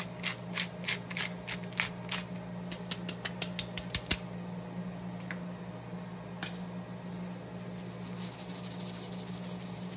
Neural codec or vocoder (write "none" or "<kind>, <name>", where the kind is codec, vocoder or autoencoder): none